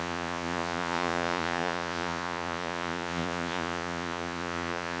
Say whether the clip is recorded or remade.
remade